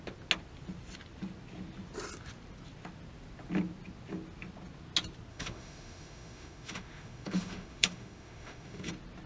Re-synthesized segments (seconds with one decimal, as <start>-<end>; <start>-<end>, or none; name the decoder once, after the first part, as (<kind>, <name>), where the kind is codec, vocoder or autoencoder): 5.3-8.9 (autoencoder, DAC-VAE)